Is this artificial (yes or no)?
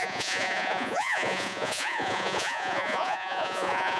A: yes